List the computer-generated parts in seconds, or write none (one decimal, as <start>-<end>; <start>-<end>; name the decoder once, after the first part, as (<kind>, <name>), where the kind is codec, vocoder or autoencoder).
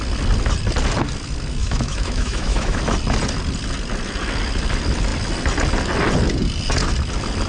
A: 1.6-2.8 (autoencoder, DAC-VAE)